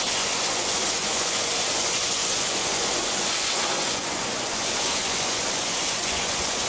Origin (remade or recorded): remade